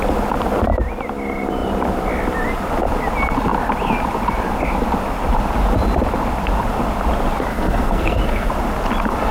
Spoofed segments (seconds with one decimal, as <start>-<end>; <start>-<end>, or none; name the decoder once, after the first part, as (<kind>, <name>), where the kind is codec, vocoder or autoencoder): 7.5-8.5 (codec, SNAC)